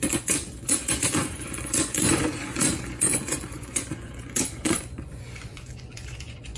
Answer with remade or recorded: remade